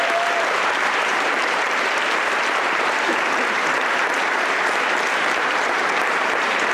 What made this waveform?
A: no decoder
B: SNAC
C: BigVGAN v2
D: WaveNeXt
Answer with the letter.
C